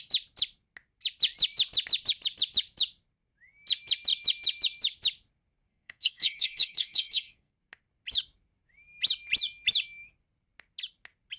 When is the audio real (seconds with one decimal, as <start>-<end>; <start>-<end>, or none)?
0.0-5.7; 7.5-11.4